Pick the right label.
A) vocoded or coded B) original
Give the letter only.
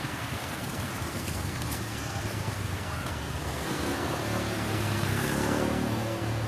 A